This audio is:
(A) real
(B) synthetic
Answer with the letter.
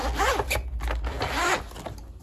A